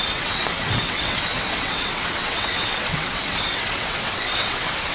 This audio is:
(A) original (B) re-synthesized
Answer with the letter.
B